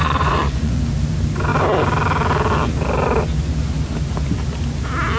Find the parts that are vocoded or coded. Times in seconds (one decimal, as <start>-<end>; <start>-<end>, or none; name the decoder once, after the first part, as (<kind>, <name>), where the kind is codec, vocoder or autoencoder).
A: 0.0-0.8 (vocoder, Vocos)